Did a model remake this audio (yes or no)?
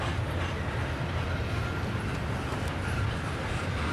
no